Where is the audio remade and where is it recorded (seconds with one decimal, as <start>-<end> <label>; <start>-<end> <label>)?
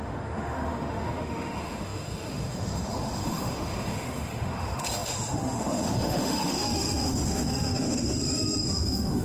0.0-9.2 remade